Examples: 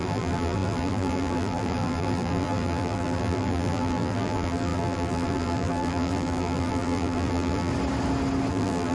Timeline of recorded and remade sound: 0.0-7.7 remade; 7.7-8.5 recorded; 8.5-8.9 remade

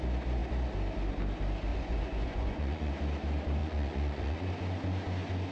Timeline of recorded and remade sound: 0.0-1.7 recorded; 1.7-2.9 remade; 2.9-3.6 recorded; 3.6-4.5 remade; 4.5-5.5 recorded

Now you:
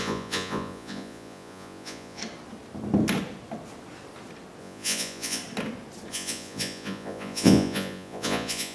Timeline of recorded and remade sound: 0.0-2.2 remade; 2.2-4.6 recorded; 4.6-5.4 remade; 5.4-6.1 recorded; 6.1-8.7 remade